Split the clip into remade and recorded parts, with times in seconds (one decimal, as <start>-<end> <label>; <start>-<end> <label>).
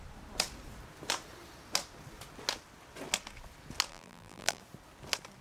0.0-3.9 recorded; 3.9-4.6 remade; 4.6-5.4 recorded